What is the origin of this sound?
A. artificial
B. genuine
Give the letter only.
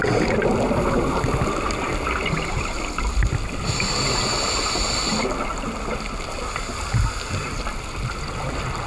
B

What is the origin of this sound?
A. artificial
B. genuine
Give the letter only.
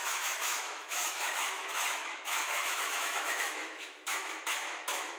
A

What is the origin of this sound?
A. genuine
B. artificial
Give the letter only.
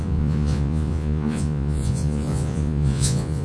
B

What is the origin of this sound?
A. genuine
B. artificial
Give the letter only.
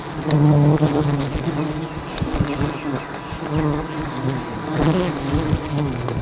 A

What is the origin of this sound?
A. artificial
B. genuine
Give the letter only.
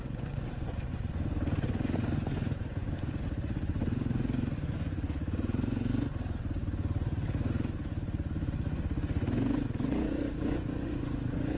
A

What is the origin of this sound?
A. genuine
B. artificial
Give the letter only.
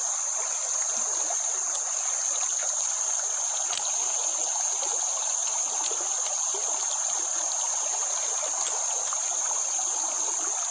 A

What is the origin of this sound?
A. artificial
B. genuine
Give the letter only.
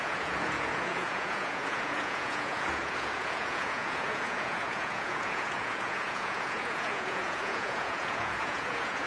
A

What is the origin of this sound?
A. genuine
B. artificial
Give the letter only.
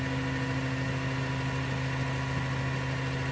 A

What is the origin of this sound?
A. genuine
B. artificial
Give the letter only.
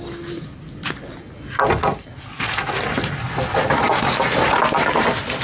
A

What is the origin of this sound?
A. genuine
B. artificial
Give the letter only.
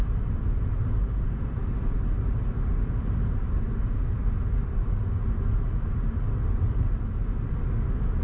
A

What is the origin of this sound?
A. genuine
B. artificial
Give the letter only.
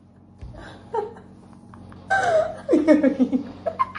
A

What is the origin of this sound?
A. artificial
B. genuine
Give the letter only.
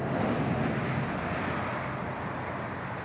B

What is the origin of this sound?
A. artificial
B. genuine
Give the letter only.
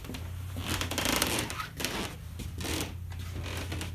B